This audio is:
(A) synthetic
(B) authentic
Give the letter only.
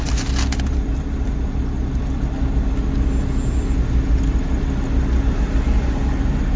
B